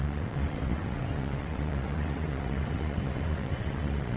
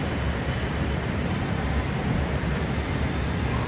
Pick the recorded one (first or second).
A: second